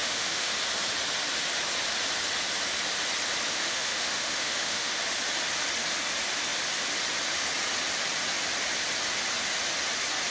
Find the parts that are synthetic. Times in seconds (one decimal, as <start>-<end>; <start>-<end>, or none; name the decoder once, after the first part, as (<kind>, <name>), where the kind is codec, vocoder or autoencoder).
0.0-0.5 (autoencoder, DAC-VAE); 3.5-5.0